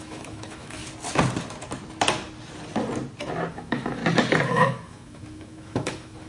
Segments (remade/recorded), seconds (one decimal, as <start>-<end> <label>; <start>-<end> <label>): 0.0-0.8 remade; 0.8-3.5 recorded; 3.5-4.0 remade; 4.0-4.5 recorded; 4.5-6.3 remade